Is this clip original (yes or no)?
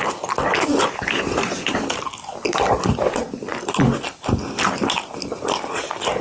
yes